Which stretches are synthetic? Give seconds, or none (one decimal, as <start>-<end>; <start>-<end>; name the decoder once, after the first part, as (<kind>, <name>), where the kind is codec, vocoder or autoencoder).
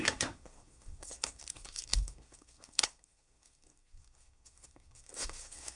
0.0-5.8 (codec, SNAC)